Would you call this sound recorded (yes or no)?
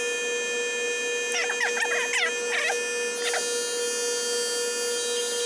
yes